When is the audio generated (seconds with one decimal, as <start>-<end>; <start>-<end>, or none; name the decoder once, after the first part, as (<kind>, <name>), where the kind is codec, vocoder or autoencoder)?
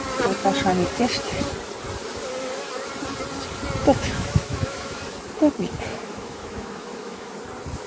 3.8-5.0 (autoencoder, DAC-VAE); 5.9-7.3